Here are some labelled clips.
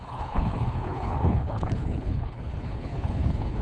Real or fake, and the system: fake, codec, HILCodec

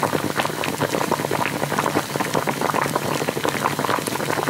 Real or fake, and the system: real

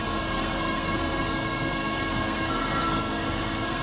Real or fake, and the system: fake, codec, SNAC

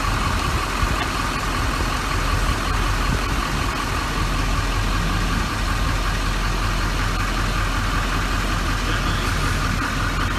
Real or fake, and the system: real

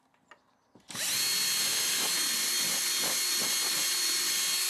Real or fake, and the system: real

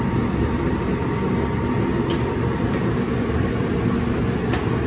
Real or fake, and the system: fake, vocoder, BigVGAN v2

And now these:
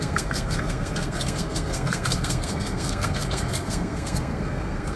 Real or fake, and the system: fake, codec, SNAC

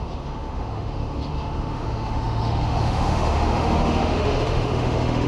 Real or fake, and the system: fake, autoencoder, DAC-VAE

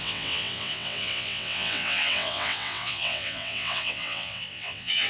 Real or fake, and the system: fake, vocoder, WaveNeXt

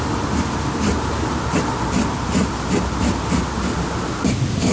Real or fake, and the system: real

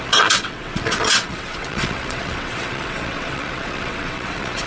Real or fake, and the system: fake, vocoder, WaveNeXt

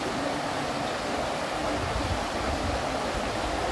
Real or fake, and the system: real